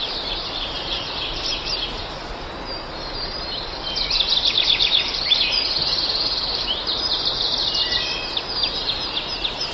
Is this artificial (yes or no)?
no